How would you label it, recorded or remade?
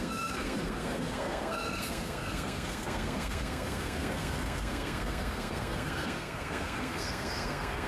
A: remade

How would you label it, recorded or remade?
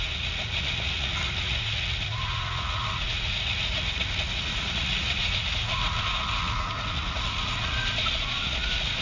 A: remade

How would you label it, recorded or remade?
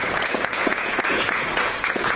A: remade